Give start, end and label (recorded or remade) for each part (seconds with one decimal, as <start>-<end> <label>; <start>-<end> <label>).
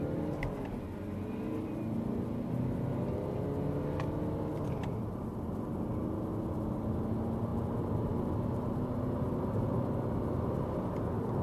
0.0-11.4 recorded